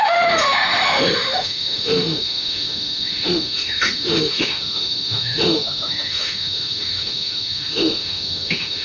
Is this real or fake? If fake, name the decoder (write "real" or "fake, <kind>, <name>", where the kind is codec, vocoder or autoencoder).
fake, autoencoder, DAC-VAE